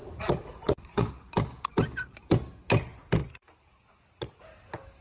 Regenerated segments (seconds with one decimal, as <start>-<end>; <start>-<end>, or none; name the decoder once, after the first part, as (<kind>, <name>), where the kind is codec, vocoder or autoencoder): 0.0-1.1 (vocoder, Vocos); 3.2-4.4